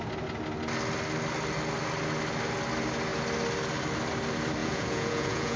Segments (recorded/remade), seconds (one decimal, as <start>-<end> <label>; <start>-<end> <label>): 0.0-4.6 recorded; 4.6-5.6 remade

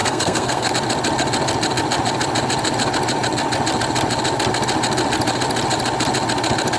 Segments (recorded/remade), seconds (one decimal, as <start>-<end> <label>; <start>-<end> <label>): 0.0-0.7 remade; 0.7-6.8 recorded

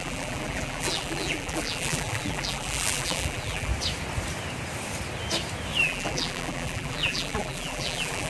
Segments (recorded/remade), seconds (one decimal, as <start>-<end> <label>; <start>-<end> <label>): 0.0-3.7 remade; 3.7-5.8 recorded; 5.8-8.3 remade

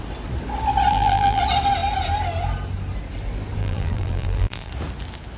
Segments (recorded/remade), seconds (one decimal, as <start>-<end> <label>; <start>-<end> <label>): 0.0-0.9 recorded; 0.9-1.4 remade; 1.4-3.6 recorded; 3.6-4.7 remade; 4.7-5.4 recorded

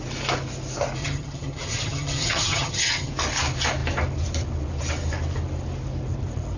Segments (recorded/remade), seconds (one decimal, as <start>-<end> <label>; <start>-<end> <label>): 0.0-1.0 recorded; 1.0-3.1 remade; 3.1-6.6 recorded

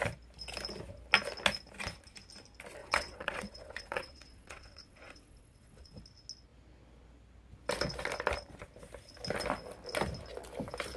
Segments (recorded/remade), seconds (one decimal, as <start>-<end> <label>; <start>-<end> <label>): 0.0-2.8 recorded; 2.8-6.0 remade; 6.0-11.0 recorded

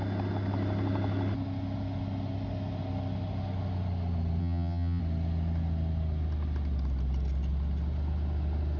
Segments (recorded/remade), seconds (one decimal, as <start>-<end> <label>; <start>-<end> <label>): 0.0-4.4 recorded; 4.4-5.0 remade; 5.0-8.8 recorded

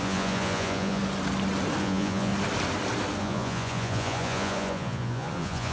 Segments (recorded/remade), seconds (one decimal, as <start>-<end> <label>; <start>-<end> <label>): 0.0-1.0 remade; 1.0-1.8 recorded; 1.8-2.3 remade; 2.3-3.2 recorded; 3.2-5.7 remade